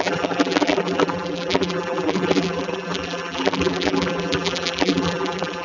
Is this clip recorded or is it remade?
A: remade